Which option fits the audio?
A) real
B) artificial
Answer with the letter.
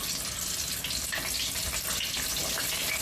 A